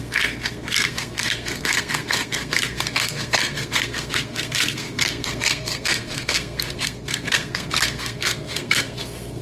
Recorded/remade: remade